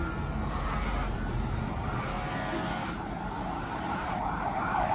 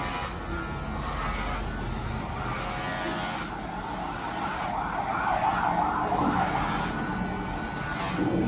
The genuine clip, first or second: second